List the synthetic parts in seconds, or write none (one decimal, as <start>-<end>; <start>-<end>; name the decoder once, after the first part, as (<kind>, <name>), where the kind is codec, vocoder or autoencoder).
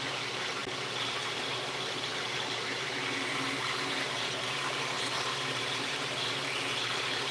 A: 0.0-0.6 (vocoder, BigVGAN v2); 1.1-7.3